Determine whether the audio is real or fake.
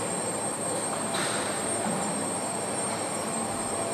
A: fake